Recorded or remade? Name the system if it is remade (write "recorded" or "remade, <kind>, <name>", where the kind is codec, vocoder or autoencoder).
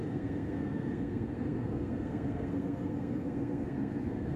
remade, codec, SNAC